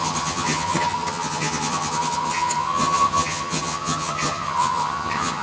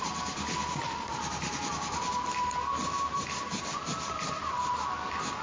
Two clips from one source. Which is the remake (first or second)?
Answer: first